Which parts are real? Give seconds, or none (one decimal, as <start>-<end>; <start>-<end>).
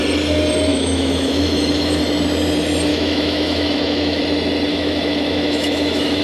0.0-0.7; 2.0-2.9; 4.2-4.7